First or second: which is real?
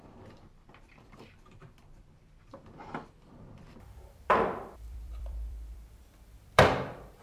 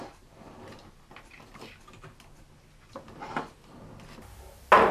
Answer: second